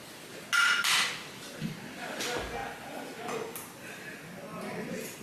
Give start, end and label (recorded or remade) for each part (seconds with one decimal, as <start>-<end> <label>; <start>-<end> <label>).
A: 0.0-5.2 recorded

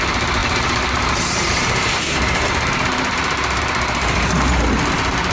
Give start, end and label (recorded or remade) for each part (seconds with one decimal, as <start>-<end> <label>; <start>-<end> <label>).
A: 0.0-0.4 recorded; 0.4-3.6 remade; 3.6-5.3 recorded